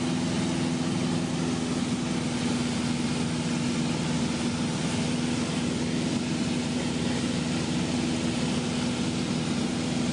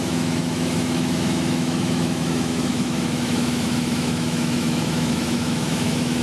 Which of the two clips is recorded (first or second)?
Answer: first